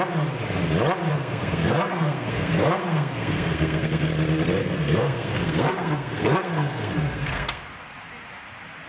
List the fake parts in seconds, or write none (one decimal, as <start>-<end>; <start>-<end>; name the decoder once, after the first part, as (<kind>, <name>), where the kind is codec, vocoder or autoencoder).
1.1-4.1 (codec, SNAC); 4.6-7.6